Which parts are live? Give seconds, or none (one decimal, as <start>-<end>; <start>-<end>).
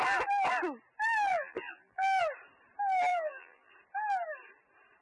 0.0-1.3; 2.2-3.1; 3.7-5.0